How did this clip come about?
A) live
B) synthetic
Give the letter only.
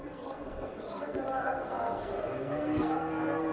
B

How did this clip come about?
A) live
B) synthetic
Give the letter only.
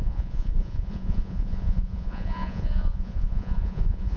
B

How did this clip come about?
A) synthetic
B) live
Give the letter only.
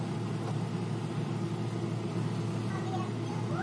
B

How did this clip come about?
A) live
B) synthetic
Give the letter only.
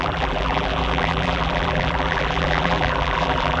B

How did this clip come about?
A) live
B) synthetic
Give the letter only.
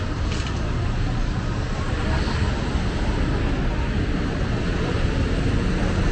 A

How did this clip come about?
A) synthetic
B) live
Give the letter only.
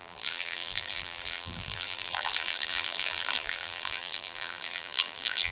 A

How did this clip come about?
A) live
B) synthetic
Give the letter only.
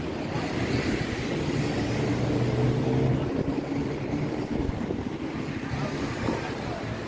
A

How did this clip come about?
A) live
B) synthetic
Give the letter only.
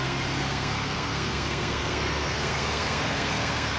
B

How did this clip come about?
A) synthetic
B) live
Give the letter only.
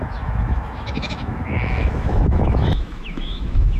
A